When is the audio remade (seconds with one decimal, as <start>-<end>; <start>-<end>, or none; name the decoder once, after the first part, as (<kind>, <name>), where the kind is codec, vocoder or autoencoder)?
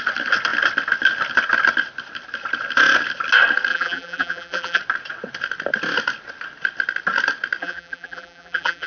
3.7-4.8 (vocoder, BigVGAN v2); 7.6-8.9